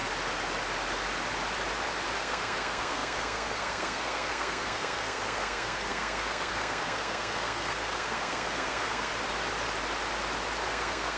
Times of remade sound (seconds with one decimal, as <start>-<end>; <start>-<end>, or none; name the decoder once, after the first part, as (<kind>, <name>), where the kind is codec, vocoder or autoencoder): 2.2-9.1 (codec, SNAC); 10.7-11.2